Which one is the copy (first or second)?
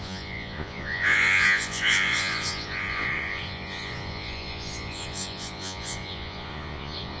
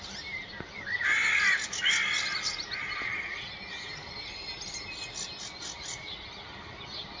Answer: first